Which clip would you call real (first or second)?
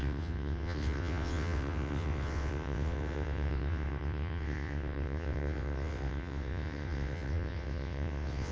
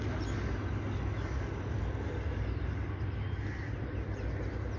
second